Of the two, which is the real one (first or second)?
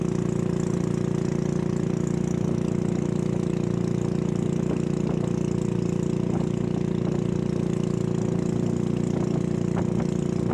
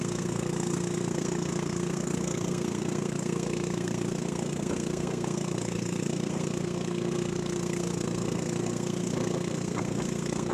first